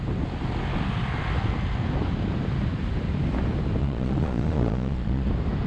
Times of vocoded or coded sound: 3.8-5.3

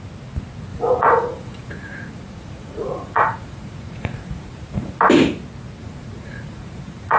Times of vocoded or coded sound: 0.7-5.0; 5.8-7.2

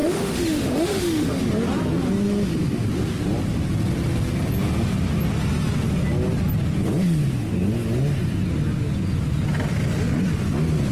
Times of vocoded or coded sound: 0.0-1.4

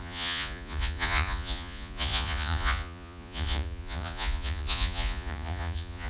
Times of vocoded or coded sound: 0.0-6.1

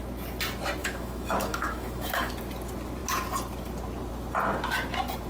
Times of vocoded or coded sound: 0.8-2.3

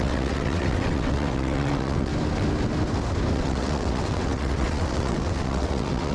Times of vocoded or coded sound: 0.0-2.1; 3.3-6.1

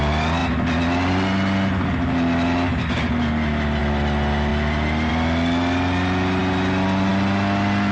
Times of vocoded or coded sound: none

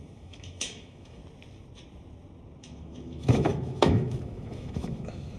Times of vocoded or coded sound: 0.0-1.2; 2.6-5.4